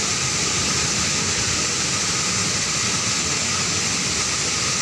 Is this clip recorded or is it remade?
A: recorded